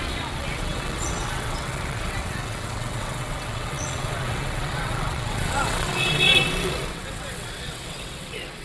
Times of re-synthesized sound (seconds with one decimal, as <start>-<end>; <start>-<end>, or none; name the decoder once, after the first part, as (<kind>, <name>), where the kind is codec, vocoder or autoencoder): 0.0-8.6 (vocoder, WaveNeXt)